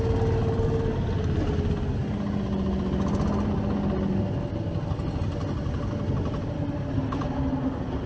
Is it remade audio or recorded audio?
recorded